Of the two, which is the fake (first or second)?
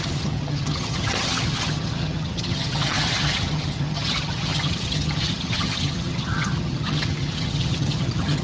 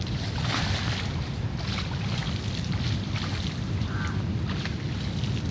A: first